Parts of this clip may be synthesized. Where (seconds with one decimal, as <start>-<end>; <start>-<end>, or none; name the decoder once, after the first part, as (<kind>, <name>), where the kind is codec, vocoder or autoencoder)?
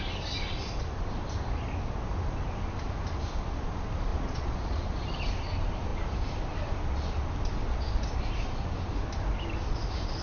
4.1-5.3 (vocoder, Vocos)